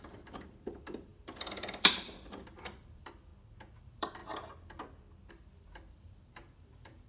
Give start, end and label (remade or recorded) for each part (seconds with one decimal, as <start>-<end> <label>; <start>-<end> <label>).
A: 0.0-3.3 remade; 3.3-3.8 recorded; 3.8-4.2 remade; 4.2-5.3 recorded; 5.3-7.1 remade